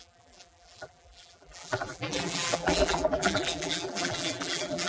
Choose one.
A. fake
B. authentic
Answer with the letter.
A